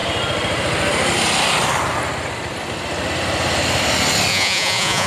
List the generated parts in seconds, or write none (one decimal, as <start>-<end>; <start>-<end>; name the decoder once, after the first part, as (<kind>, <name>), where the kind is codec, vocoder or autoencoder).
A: 4.3-5.1 (vocoder, Vocos)